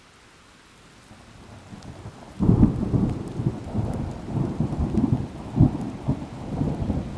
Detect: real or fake real